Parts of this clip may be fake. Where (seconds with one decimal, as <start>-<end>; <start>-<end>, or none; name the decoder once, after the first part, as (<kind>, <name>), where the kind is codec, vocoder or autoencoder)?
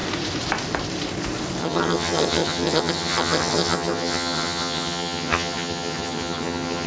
1.6-6.9 (vocoder, HiFi-GAN)